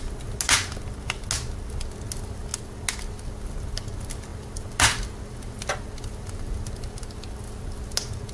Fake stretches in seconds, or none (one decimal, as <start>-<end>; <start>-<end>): none